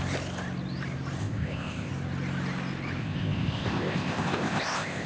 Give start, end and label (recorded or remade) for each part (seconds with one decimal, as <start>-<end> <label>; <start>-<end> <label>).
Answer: 0.0-1.2 recorded; 1.2-1.9 remade; 1.9-3.0 recorded; 3.0-5.1 remade